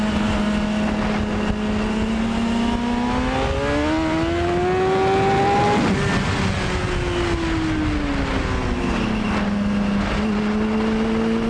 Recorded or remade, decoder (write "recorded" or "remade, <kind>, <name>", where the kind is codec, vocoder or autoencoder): recorded